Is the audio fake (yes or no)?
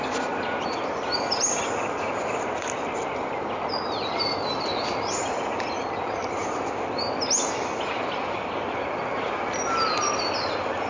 no